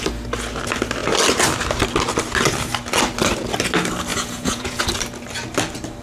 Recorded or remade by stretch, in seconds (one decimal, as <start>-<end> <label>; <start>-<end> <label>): 0.0-4.1 recorded; 4.1-4.8 remade; 4.8-6.0 recorded